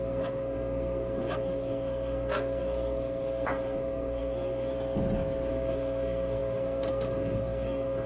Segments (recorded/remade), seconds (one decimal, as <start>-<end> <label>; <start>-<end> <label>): 0.0-4.7 remade; 4.7-5.5 recorded; 5.5-8.1 remade